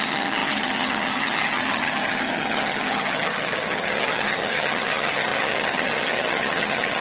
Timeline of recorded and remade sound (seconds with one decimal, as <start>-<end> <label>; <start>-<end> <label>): 0.0-7.0 remade